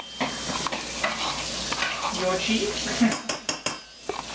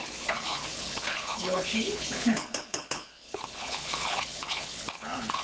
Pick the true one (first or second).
first